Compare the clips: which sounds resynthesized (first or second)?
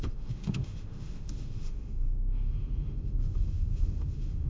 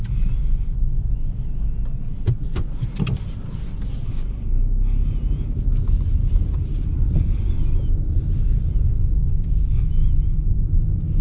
first